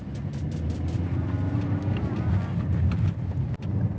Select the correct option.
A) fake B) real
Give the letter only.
B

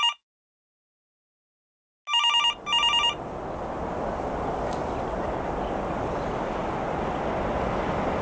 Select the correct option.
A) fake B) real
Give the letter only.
B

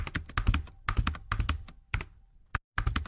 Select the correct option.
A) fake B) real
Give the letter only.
B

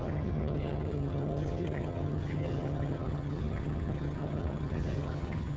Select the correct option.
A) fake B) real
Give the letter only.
A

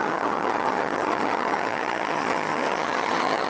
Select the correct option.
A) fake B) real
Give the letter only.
A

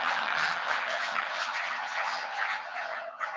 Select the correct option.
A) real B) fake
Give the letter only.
B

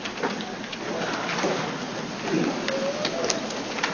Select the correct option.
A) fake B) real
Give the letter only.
B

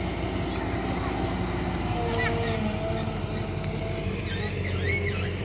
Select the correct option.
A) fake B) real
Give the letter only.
B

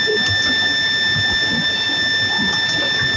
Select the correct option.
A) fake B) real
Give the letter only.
B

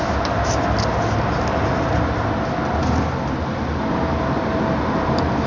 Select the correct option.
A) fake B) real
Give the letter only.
B